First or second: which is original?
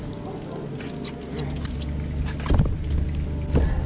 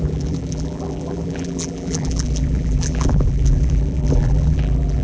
first